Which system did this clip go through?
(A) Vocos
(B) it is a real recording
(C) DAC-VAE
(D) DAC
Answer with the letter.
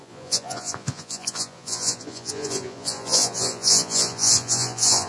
A